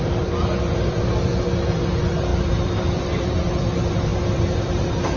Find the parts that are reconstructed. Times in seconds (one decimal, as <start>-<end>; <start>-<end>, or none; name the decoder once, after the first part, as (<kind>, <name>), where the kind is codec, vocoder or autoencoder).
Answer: 0.0-5.2 (vocoder, BigVGAN v2)